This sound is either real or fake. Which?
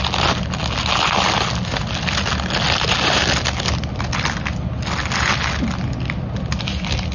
real